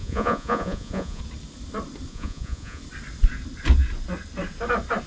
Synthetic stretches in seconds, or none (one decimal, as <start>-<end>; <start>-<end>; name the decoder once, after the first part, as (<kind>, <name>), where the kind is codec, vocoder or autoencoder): 0.0-1.2 (vocoder, Vocos); 2.1-2.8